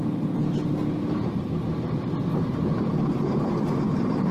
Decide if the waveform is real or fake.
real